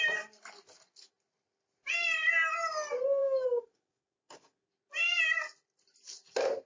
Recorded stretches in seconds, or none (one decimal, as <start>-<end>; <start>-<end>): 0.0-3.2; 4.7-6.7